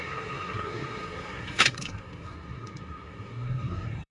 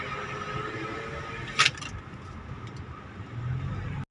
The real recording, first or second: second